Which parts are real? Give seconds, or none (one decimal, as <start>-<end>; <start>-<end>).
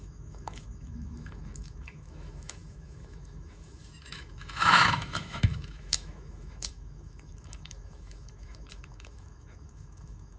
none